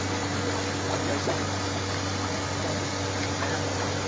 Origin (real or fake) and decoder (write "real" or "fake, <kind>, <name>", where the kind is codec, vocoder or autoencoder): real